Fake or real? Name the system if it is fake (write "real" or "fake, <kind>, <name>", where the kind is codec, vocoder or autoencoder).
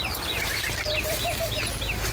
real